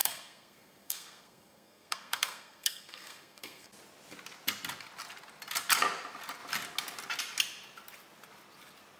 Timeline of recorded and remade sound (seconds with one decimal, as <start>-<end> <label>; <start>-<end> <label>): 0.0-3.7 remade; 3.7-9.0 recorded